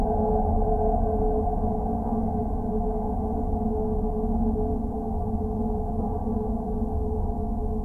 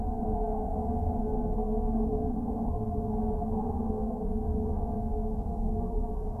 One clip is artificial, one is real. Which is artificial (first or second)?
second